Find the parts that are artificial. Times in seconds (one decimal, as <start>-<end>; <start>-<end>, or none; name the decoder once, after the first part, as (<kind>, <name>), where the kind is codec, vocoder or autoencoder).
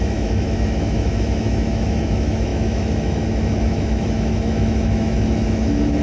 0.0-6.0 (autoencoder, DAC-VAE)